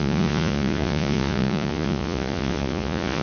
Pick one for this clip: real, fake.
fake